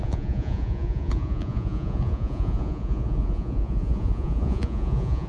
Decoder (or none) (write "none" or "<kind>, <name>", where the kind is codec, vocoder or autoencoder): vocoder, Vocos